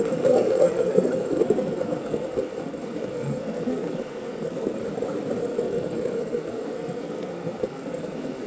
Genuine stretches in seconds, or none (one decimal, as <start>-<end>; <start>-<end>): 4.8-5.4

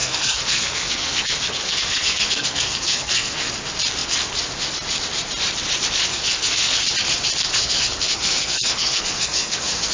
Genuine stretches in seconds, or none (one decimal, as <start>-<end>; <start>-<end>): 3.5-6.1; 6.8-7.5